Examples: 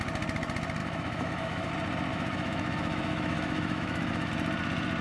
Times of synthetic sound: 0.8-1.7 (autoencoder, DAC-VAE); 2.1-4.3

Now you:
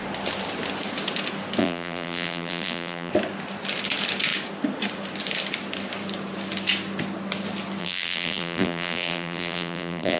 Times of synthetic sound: 1.6-3.1 (vocoder, BigVGAN v2); 7.8-10.2